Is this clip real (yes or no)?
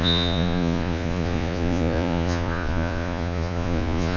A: no